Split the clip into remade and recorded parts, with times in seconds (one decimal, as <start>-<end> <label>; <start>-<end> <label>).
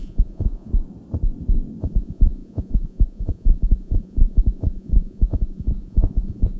0.0-0.7 remade; 0.7-1.8 recorded; 1.8-6.6 remade